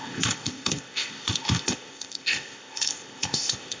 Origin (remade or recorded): remade